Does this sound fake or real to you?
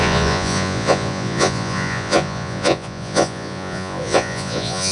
fake